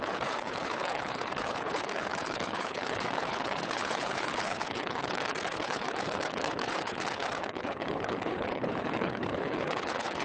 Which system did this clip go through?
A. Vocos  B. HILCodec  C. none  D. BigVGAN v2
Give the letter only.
B